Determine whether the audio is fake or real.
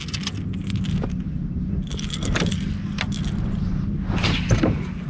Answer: real